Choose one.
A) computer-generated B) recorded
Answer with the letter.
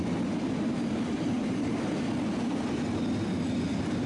B